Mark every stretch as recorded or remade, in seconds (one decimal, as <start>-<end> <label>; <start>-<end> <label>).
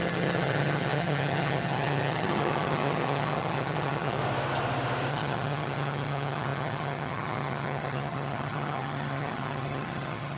0.0-4.2 remade; 4.2-5.1 recorded; 5.1-10.4 remade